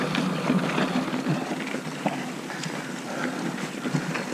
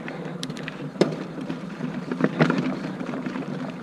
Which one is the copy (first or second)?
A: second